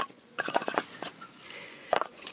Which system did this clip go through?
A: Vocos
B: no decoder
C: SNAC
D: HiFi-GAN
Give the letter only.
A